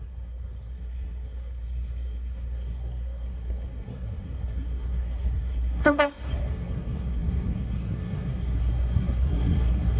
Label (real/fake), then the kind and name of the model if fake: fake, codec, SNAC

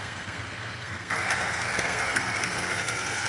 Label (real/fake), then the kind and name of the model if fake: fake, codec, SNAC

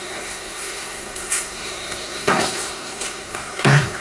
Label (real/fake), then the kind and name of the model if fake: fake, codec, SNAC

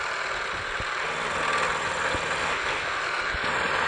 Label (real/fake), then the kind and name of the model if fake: real